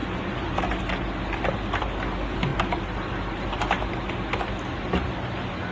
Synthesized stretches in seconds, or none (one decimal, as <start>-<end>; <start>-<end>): 0.0-0.6; 2.5-3.5